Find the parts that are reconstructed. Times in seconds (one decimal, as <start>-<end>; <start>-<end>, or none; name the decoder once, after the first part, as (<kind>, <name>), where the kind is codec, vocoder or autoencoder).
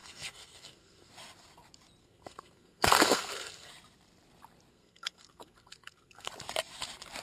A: 0.0-1.1 (codec, SNAC); 2.0-3.7; 4.7-6.3